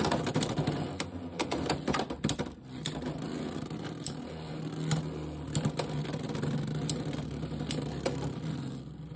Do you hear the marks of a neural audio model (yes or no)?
no